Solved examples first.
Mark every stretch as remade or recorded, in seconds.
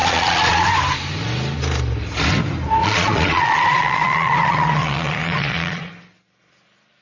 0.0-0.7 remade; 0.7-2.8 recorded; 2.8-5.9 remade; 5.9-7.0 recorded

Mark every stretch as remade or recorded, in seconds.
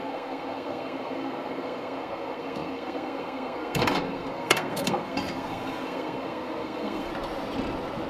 0.0-7.1 remade; 7.1-8.1 recorded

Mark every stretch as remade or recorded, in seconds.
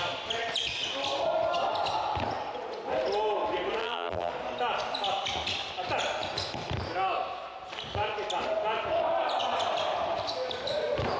0.0-3.8 recorded; 3.8-4.3 remade; 4.3-11.2 recorded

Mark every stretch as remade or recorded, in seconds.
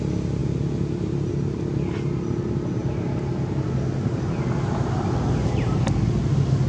0.0-6.7 recorded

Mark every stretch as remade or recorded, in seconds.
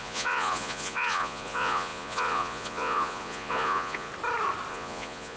0.0-4.1 remade; 4.1-4.7 recorded; 4.7-5.4 remade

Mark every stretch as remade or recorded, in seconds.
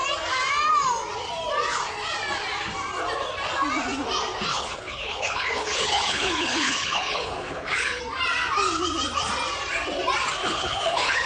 0.0-4.5 recorded; 4.5-8.0 remade; 8.0-10.4 recorded; 10.4-11.3 remade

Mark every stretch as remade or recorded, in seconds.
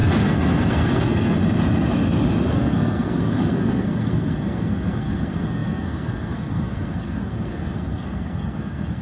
0.0-1.4 remade; 1.4-2.5 recorded; 2.5-9.0 remade